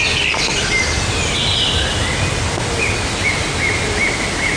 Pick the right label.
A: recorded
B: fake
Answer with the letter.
A